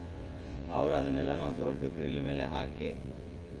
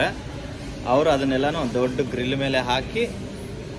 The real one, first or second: second